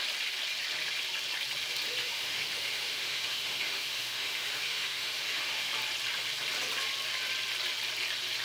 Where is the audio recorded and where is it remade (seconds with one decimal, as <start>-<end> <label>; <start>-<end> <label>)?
0.0-2.0 recorded; 2.0-5.7 remade; 5.7-8.4 recorded